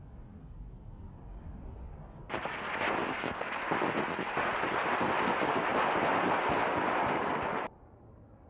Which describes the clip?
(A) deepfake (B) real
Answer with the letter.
B